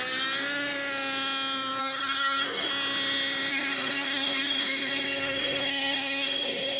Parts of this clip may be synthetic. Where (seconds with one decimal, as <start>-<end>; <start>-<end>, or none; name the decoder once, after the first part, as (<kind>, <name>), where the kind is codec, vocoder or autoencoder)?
1.8-2.7 (codec, SNAC); 3.5-6.8